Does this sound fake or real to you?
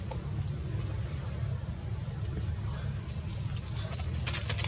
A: real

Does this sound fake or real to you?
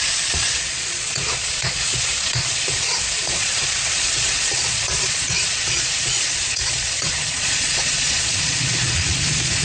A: fake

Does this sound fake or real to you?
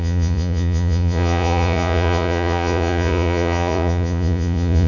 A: fake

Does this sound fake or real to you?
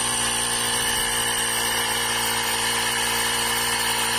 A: real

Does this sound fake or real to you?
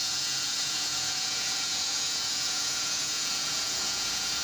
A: fake